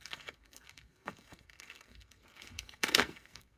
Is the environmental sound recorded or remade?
remade